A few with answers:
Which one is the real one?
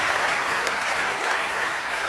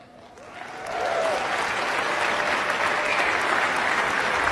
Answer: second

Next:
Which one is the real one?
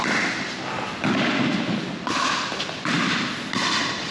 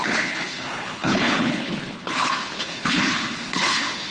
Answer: first